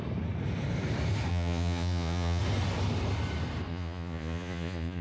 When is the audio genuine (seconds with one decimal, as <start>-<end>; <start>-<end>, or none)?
0.0-1.3; 2.4-3.7